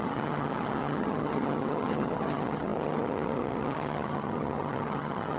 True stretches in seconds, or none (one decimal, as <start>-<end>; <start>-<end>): none